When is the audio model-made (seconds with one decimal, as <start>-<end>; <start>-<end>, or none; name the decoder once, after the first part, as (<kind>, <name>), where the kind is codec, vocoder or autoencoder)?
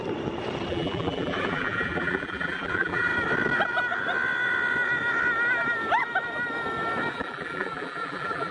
0.7-3.1 (vocoder, BigVGAN v2); 7.1-8.5